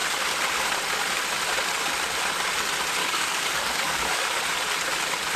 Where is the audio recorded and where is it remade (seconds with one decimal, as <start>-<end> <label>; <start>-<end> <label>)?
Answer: 0.0-3.0 recorded; 3.0-4.4 remade; 4.4-5.4 recorded